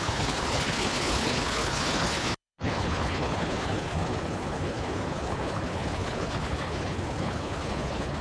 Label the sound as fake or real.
fake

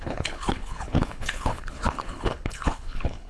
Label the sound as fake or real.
fake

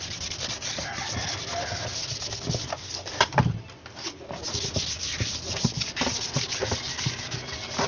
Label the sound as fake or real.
real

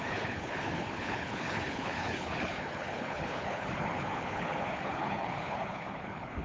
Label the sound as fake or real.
fake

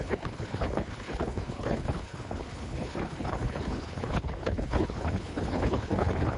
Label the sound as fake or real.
fake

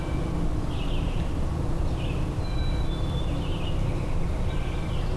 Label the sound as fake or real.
real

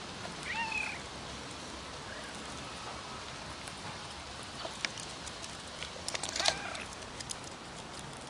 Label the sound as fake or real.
real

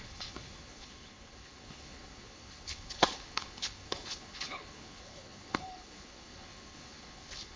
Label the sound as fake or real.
fake